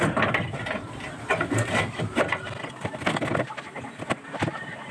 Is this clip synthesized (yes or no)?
no